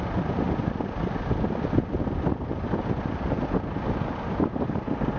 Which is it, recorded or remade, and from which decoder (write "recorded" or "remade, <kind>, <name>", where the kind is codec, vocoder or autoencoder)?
recorded